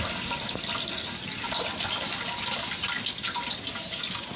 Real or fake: real